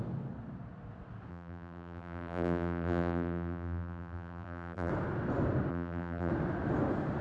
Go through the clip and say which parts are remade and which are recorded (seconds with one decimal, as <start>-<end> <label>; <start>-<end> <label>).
0.0-1.3 recorded; 1.3-4.9 remade; 4.9-5.7 recorded; 5.7-6.3 remade; 6.3-7.2 recorded